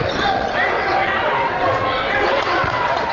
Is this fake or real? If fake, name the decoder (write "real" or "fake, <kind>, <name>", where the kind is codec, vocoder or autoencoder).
fake, vocoder, WaveNeXt